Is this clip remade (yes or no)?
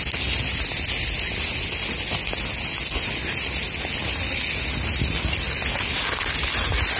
no